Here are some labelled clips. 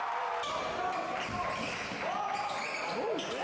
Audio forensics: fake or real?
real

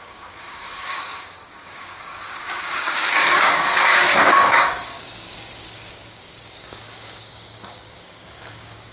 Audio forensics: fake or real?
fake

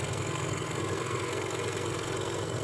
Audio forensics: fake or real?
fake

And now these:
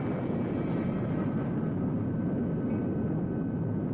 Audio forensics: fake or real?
real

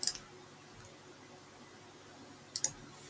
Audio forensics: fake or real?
real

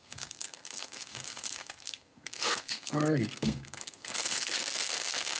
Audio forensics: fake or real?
fake